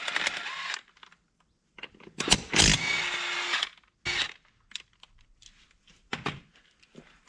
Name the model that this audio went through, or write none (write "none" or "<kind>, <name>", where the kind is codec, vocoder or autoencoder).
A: none